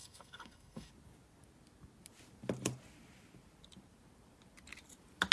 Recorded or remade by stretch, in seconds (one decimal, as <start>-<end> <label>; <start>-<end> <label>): 0.0-0.9 remade; 0.9-5.3 recorded